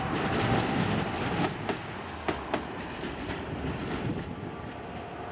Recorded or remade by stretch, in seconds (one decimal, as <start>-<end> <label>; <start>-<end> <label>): 0.0-5.3 recorded